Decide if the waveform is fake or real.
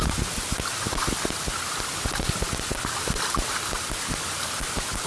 real